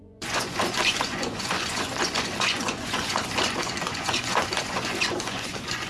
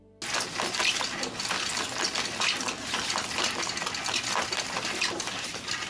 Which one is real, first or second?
second